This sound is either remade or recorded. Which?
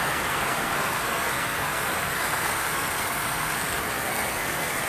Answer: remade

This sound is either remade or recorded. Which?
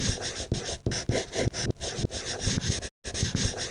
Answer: recorded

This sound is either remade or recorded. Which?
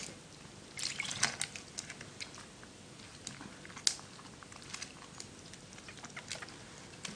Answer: recorded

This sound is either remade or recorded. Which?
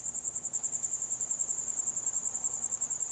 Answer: remade